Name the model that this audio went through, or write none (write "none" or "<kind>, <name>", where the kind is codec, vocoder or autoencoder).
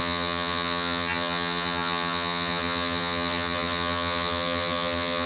vocoder, HiFi-GAN